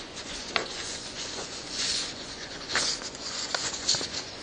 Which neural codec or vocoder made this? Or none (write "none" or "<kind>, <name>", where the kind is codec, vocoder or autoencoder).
vocoder, Vocos